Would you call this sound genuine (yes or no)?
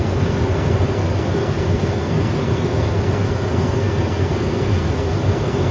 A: no